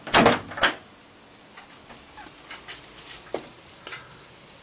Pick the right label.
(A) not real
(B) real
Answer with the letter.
B